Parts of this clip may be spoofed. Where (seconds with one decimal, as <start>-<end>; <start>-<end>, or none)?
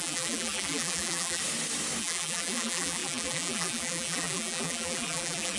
0.0-1.4; 2.0-5.6